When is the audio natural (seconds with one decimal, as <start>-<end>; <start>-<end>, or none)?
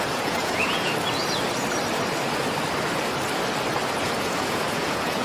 0.9-4.0